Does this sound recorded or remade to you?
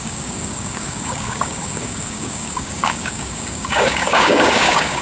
remade